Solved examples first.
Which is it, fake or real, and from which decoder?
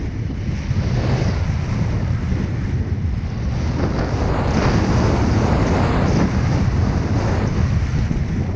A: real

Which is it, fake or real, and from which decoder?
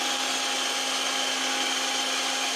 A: real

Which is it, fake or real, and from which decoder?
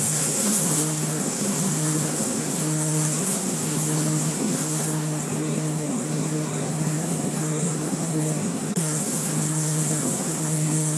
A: fake, codec, SNAC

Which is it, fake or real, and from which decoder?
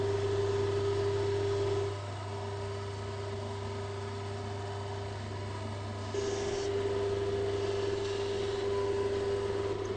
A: real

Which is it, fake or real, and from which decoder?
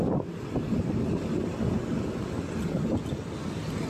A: real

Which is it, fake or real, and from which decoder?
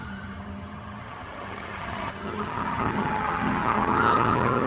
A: fake, vocoder, HiFi-GAN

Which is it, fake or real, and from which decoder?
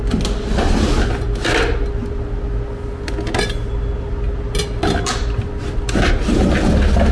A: real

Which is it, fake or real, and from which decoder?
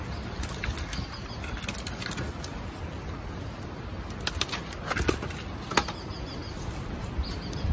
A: real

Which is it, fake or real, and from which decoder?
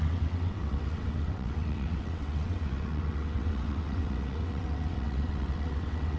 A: fake, vocoder, WaveNeXt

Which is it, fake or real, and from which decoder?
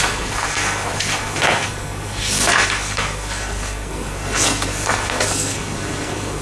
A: fake, codec, SNAC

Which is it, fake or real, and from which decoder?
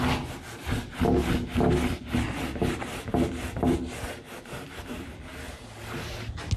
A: real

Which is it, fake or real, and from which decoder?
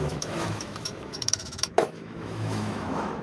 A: fake, autoencoder, DAC-VAE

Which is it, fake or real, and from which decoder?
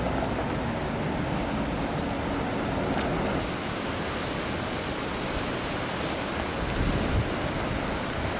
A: real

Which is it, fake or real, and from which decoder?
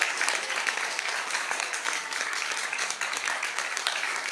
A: fake, codec, DAC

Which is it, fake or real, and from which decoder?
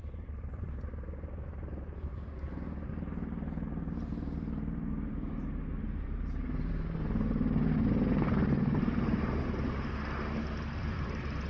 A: fake, vocoder, BigVGAN v2